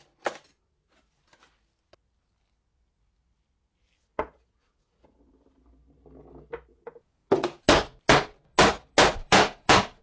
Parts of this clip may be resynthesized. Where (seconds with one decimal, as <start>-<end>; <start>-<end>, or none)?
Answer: 4.1-5.2; 6.7-7.6; 9.2-10.0